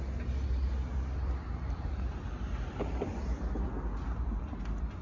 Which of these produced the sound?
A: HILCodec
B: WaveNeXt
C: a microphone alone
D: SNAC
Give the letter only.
C